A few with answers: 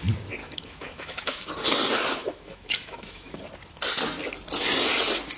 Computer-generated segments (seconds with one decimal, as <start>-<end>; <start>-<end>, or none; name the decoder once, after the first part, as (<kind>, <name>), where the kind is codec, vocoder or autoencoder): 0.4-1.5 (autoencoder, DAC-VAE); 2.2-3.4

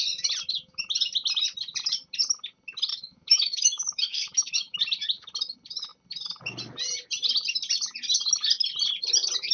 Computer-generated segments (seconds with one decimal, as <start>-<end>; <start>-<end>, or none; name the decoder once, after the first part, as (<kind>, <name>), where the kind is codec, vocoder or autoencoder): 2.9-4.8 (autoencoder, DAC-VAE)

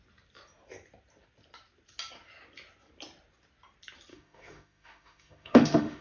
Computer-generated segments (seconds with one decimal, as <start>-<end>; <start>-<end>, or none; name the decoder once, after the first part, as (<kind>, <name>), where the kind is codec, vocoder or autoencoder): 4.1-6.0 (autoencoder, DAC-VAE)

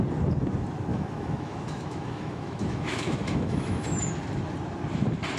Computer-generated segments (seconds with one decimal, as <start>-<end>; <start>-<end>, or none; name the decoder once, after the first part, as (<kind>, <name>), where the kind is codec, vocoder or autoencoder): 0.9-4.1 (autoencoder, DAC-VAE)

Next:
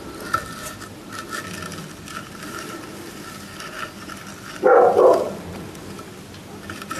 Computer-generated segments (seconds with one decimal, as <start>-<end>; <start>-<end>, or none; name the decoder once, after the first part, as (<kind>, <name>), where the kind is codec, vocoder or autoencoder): none